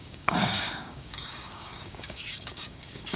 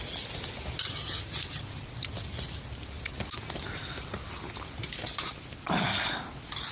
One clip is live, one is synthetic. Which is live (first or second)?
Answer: second